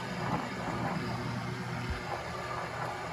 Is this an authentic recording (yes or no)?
yes